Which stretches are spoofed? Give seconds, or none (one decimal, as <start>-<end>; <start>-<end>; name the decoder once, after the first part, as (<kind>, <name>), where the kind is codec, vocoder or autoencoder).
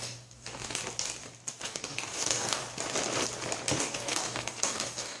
0.0-0.8 (codec, DAC); 1.6-2.6; 3.8-5.2